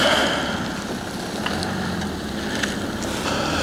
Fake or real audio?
real